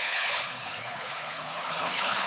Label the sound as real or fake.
fake